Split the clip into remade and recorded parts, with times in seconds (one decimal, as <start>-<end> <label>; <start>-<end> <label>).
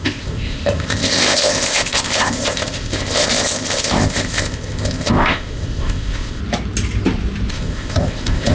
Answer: 0.0-6.4 remade; 6.4-7.5 recorded; 7.5-8.5 remade